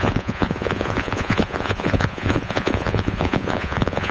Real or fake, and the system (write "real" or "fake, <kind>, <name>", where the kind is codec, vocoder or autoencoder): fake, vocoder, Vocos